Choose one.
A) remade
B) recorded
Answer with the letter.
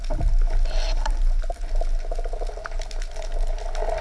B